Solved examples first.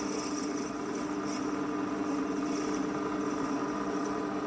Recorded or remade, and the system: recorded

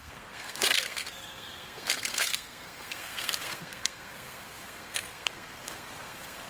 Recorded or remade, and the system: remade, codec, SNAC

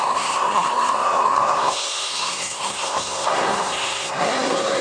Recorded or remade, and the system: remade, codec, SNAC